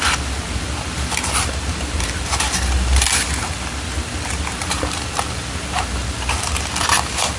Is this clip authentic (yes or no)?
no